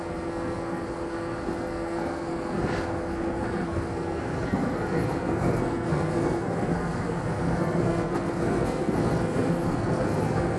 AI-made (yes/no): yes